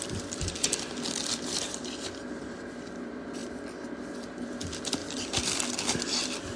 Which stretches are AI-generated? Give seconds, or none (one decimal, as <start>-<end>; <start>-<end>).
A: 0.0-6.6